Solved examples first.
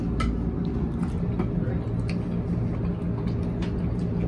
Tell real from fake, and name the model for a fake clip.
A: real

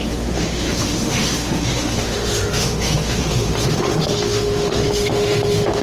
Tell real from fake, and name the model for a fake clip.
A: fake, autoencoder, DAC-VAE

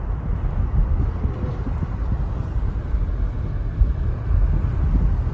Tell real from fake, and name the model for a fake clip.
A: real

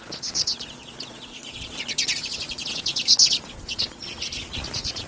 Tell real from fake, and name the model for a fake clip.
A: fake, vocoder, Vocos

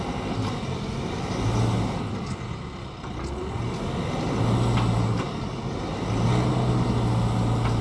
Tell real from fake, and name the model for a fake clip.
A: real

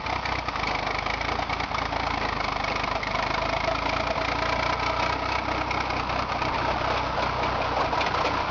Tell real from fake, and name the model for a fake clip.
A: real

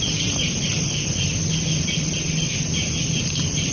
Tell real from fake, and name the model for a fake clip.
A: real